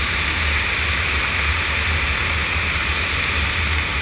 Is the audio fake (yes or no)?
no